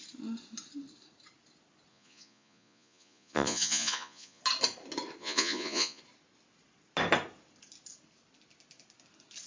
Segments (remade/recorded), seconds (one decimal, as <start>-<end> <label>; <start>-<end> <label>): 0.0-1.9 recorded; 1.9-4.4 remade; 4.4-5.2 recorded; 5.2-6.0 remade; 6.0-9.5 recorded